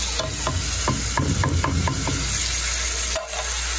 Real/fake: real